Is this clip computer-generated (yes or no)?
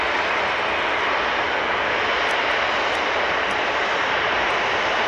no